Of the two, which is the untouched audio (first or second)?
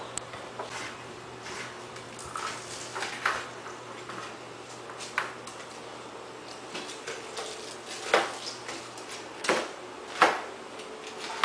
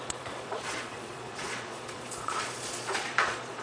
first